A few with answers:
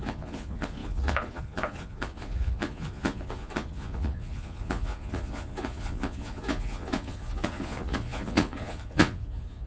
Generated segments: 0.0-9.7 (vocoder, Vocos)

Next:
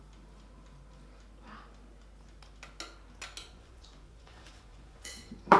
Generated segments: 3.4-5.6 (vocoder, Vocos)

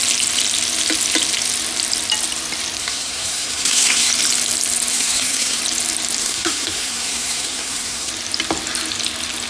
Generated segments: 2.8-4.1 (codec, SNAC); 4.9-5.6; 6.2-8.1

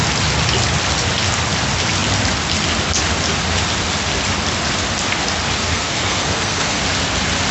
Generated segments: 5.6-6.8 (codec, SNAC)

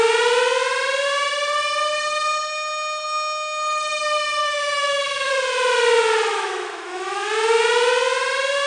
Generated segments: 4.4-5.3 (autoencoder, DAC-VAE); 6.3-7.3

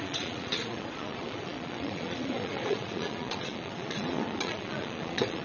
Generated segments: 0.0-5.4 (vocoder, Vocos)